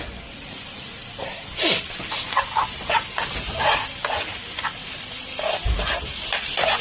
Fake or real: real